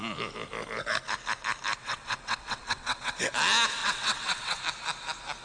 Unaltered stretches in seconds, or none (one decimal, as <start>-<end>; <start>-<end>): 0.0-1.8; 3.2-3.8; 4.6-5.4